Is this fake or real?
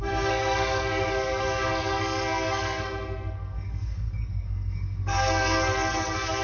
fake